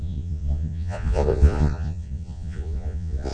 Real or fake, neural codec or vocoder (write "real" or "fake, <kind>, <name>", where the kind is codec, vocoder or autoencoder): fake, vocoder, Vocos